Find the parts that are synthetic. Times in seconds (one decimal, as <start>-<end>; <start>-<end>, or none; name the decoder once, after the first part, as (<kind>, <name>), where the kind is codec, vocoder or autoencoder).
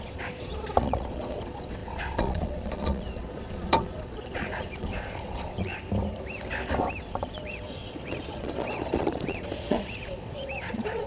0.0-5.7 (vocoder, Vocos); 7.0-11.1